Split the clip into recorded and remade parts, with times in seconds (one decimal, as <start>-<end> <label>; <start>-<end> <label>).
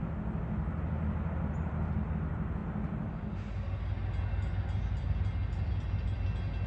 0.0-6.7 recorded